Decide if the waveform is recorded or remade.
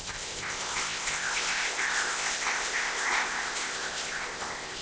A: remade